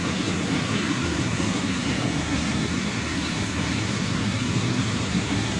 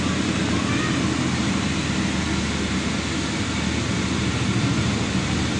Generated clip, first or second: first